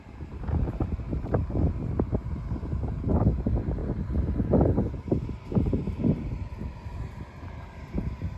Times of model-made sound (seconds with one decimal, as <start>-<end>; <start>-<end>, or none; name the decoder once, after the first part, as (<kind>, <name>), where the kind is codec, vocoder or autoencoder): none